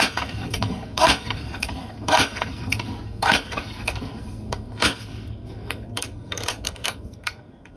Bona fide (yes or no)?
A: no